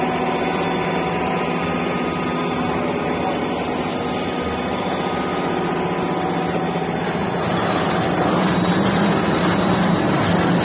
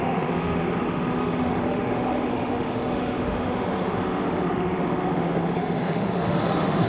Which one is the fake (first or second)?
second